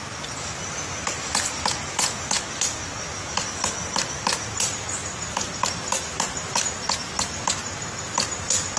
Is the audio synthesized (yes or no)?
no